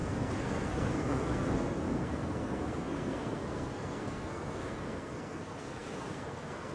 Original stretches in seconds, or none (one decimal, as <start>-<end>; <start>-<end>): none